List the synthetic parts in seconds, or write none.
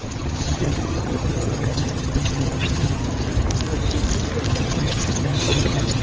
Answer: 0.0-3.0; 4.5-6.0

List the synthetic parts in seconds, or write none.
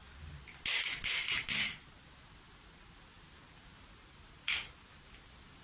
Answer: none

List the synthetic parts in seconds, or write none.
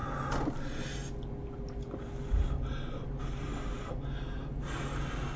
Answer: none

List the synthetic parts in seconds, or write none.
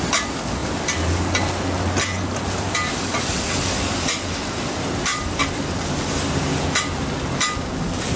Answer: none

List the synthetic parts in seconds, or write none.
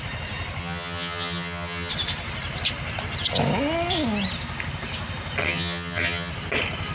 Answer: 0.6-1.9; 5.4-6.3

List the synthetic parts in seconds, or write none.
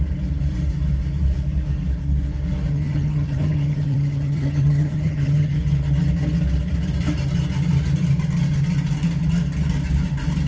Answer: 2.7-5.6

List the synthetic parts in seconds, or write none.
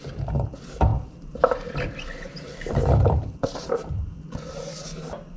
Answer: none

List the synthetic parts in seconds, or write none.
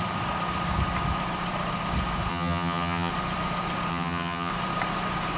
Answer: 2.3-3.1; 3.9-4.5